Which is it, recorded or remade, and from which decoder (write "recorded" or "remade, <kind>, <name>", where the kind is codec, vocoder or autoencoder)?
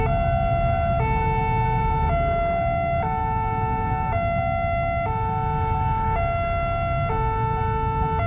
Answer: recorded